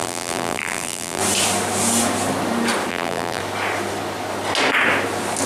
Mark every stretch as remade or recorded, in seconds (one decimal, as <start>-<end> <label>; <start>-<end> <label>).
0.0-1.2 remade; 1.2-2.9 recorded; 2.9-3.4 remade; 3.4-5.5 recorded